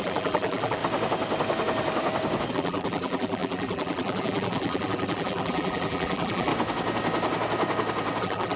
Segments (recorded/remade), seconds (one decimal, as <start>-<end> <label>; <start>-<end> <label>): 0.0-0.8 remade; 0.8-2.5 recorded; 2.5-6.5 remade; 6.5-8.2 recorded; 8.2-8.6 remade